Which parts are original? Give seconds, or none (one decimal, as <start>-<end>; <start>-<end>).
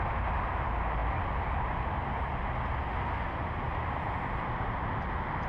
0.0-5.5